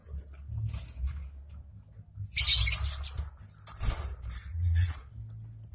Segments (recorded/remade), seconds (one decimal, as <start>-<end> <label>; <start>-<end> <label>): 0.0-4.5 recorded; 4.5-5.1 remade; 5.1-5.7 recorded